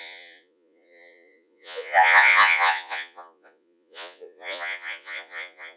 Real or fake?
fake